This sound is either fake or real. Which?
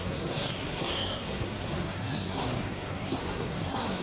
fake